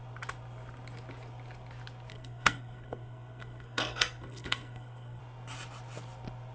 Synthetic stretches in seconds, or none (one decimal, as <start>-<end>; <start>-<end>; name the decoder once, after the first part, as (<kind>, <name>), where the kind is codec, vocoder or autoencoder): 2.1-5.2 (codec, SNAC)